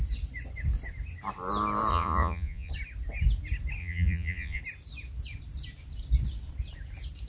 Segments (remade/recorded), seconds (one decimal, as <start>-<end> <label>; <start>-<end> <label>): 0.0-1.9 recorded; 1.9-2.7 remade; 2.7-3.8 recorded; 3.8-4.6 remade; 4.6-7.3 recorded